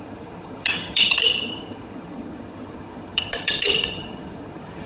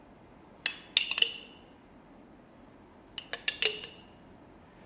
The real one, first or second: second